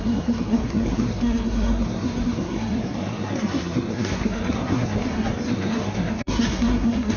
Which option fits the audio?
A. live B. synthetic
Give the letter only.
B